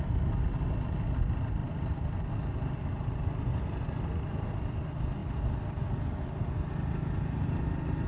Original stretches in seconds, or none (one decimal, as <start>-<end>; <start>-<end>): 0.0-8.1